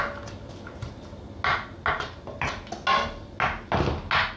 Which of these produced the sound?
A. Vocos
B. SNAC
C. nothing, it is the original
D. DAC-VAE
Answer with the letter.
C